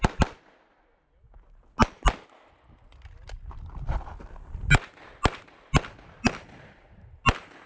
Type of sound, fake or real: real